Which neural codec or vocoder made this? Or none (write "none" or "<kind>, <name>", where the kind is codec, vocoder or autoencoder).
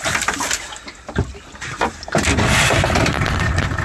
none